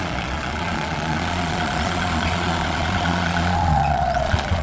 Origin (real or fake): fake